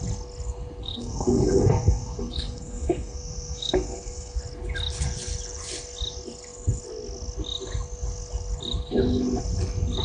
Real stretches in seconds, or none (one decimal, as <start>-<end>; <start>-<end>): 0.0-0.8; 4.4-10.0